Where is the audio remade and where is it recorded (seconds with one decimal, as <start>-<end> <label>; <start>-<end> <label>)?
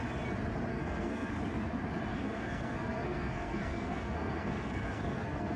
0.0-0.7 recorded; 0.7-1.3 remade; 1.3-2.1 recorded; 2.1-5.6 remade